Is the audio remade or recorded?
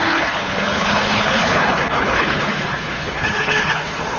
remade